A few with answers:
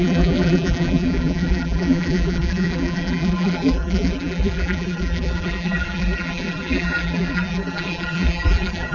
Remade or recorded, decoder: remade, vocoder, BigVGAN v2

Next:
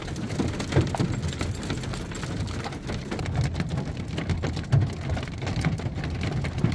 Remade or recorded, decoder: recorded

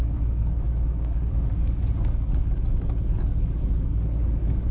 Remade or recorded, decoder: remade, codec, DAC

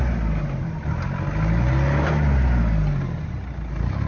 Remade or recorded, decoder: recorded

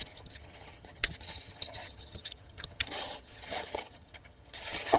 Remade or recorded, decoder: remade, vocoder, HiFi-GAN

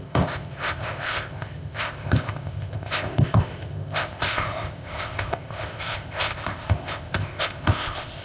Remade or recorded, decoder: remade, codec, ZipCodec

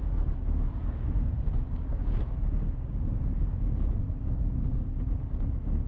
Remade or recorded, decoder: remade, codec, DAC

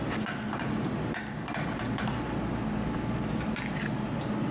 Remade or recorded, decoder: recorded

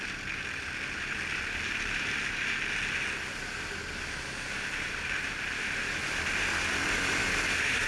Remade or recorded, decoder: recorded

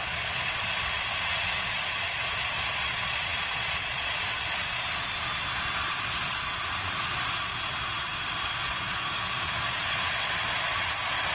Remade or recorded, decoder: remade, vocoder, Vocos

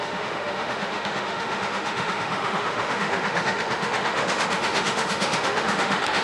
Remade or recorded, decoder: remade, autoencoder, DAC-VAE